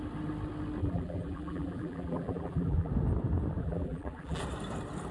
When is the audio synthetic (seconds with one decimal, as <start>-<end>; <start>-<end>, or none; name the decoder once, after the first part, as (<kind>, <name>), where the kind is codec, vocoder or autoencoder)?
0.8-2.9 (vocoder, BigVGAN v2); 3.6-4.4